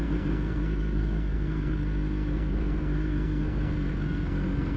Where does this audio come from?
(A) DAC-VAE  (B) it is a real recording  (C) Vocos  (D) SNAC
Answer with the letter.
D